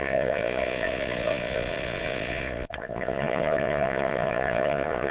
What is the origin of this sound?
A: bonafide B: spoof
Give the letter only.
B